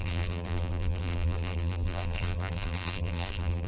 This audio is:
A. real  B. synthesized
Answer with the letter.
B